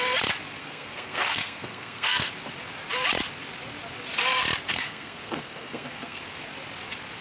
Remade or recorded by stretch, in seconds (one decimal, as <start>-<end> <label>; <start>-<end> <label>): 0.0-0.6 recorded; 0.6-2.3 remade; 2.3-4.7 recorded; 4.7-6.2 remade; 6.2-7.2 recorded